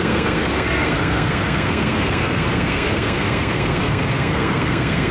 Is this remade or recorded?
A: remade